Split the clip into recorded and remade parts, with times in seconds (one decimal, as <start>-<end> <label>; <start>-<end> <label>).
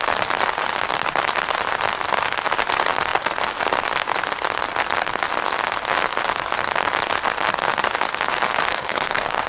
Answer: 0.0-8.7 recorded; 8.7-9.5 remade